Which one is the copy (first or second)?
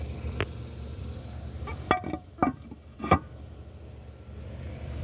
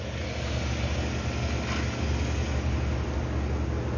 first